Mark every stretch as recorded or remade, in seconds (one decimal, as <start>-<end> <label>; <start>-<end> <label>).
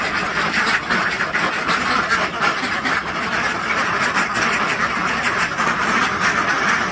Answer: 0.0-5.0 remade; 5.0-6.1 recorded; 6.1-6.9 remade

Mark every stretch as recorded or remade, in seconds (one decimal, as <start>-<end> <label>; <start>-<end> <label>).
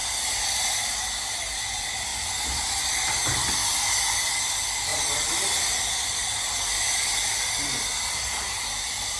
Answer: 0.0-2.1 recorded; 2.1-3.1 remade; 3.1-4.9 recorded; 4.9-5.9 remade; 5.9-9.2 recorded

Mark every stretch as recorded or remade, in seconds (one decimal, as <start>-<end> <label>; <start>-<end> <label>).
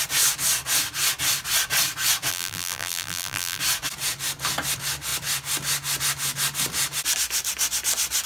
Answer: 0.0-2.3 recorded; 2.3-3.6 remade; 3.6-8.3 recorded